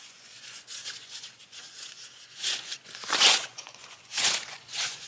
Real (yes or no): no